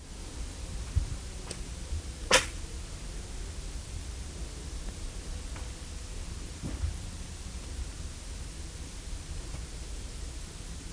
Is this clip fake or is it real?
real